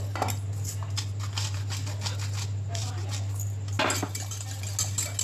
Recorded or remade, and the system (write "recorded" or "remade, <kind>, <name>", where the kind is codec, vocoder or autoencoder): recorded